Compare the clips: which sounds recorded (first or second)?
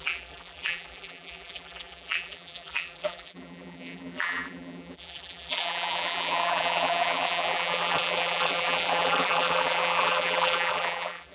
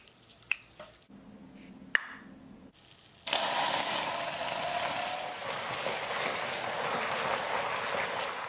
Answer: second